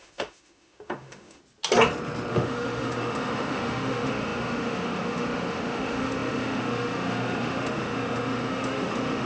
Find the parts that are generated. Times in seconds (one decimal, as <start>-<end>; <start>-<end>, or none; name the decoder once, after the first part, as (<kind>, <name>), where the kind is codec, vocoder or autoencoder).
0.0-1.4 (autoencoder, DAC-VAE); 2.3-9.3